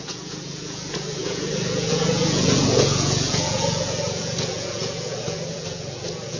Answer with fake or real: fake